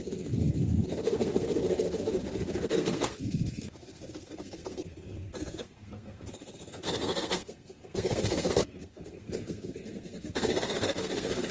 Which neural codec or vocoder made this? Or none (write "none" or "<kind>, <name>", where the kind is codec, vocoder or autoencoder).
codec, SNAC